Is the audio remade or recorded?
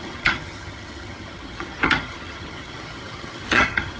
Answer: remade